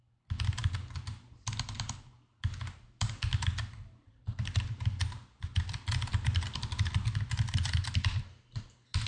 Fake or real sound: real